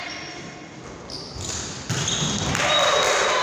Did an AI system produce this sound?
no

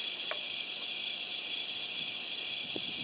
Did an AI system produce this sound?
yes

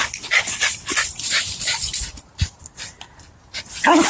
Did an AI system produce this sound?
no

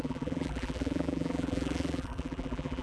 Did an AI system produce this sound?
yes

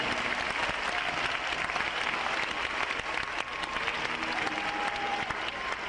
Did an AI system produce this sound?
no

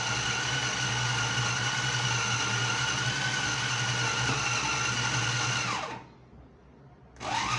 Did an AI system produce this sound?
no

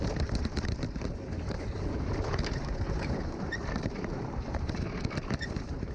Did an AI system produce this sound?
yes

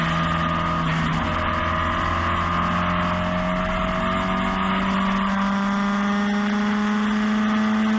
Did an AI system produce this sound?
no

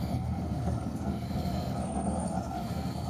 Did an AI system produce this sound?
yes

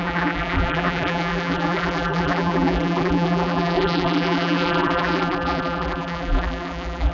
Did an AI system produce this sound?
yes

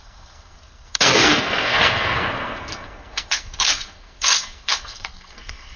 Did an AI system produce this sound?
yes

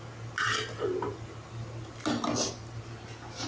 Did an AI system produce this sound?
no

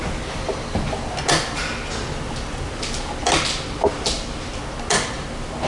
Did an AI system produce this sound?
no